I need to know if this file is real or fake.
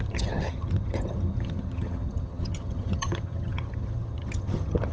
fake